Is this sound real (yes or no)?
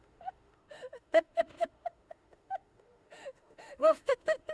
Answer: no